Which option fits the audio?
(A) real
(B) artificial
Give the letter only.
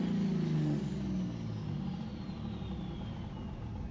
A